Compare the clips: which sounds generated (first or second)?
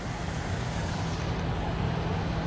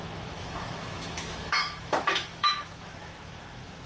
second